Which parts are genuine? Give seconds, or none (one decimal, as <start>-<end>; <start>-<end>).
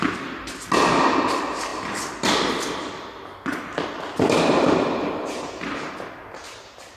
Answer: 0.0-7.0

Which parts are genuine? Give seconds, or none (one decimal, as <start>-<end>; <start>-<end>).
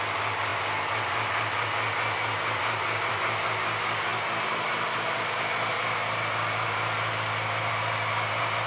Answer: 0.0-8.7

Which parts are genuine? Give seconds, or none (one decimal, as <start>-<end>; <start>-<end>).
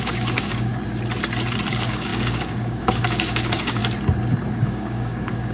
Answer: 0.7-1.7; 3.8-4.5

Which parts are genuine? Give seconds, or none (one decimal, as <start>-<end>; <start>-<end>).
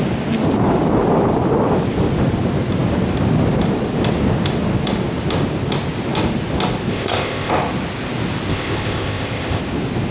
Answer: 0.0-6.9; 7.5-8.5; 9.6-10.1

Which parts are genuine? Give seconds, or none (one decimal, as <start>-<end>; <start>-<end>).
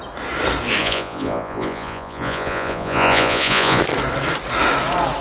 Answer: 0.0-0.8; 3.8-5.2